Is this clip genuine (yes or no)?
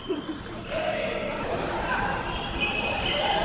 no